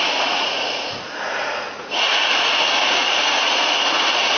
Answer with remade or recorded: remade